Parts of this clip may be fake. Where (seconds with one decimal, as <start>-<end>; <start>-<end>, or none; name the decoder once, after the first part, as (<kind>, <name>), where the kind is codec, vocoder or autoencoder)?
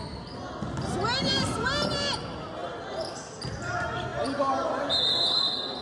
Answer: 2.6-3.5 (vocoder, BigVGAN v2)